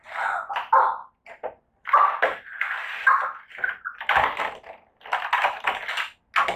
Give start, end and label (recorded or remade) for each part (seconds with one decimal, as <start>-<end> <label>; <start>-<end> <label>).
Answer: 0.0-6.6 recorded

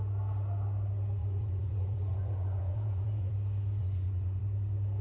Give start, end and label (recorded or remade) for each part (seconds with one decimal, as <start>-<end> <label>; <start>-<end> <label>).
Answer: 0.0-1.2 recorded; 1.2-3.3 remade; 3.3-3.8 recorded; 3.8-4.4 remade; 4.4-5.0 recorded

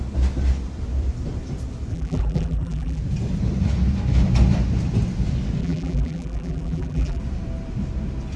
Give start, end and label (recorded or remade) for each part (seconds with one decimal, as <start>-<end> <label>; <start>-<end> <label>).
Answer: 0.0-1.9 recorded; 1.9-3.0 remade; 3.0-5.6 recorded; 5.6-7.2 remade; 7.2-8.4 recorded

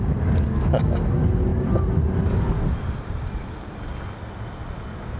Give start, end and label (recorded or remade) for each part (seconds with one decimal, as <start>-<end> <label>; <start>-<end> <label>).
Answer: 0.0-5.2 recorded